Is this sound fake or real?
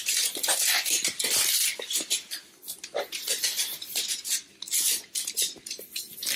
real